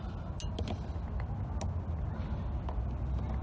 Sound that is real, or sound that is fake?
real